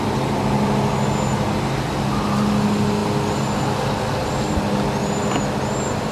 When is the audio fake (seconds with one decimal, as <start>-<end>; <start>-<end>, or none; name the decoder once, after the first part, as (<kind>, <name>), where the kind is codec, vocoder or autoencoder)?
none